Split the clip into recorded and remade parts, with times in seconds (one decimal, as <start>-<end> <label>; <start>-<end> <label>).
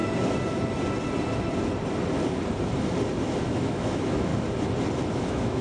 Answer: 0.0-3.4 recorded; 3.4-4.3 remade; 4.3-5.1 recorded; 5.1-5.6 remade